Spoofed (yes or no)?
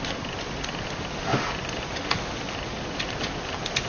no